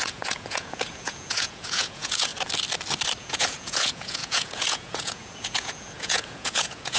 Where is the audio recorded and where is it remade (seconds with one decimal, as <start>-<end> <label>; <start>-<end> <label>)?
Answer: 0.0-2.3 remade; 2.3-3.2 recorded; 3.2-7.0 remade